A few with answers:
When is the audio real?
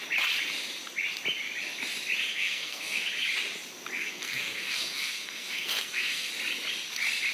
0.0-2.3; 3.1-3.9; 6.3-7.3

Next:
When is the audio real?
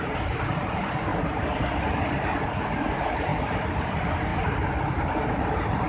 1.1-1.8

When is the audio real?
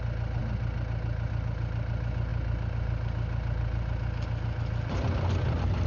0.0-5.9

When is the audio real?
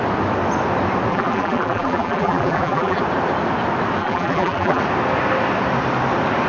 0.0-1.1; 3.0-4.0; 4.8-6.5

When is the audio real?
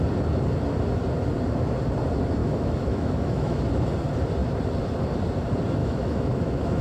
0.0-2.4; 3.6-5.8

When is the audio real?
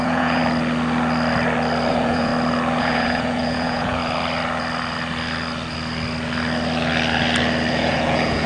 0.4-1.9; 2.3-2.8; 4.0-7.7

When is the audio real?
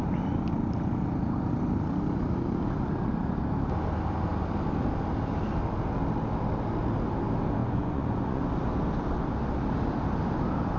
0.0-7.6; 8.4-10.8